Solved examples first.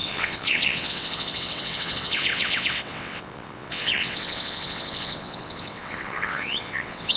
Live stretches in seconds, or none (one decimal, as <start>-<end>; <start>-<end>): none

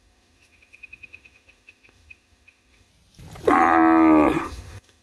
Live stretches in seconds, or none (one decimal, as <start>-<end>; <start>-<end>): 2.9-4.4

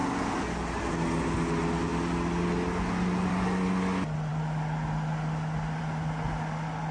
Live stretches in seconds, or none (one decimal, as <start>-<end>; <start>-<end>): 0.0-6.9

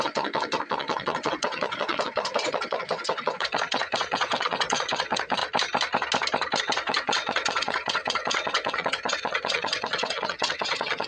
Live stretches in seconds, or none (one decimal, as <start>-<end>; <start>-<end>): 5.4-6.6

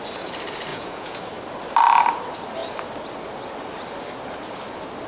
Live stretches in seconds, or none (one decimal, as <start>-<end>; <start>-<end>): 0.0-0.7; 1.2-5.1

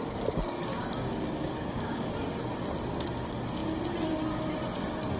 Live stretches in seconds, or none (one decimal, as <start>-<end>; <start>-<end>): 0.0-0.7; 2.1-5.2

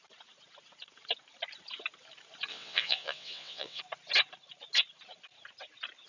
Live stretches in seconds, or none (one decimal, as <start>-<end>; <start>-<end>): 0.0-2.5; 3.8-6.1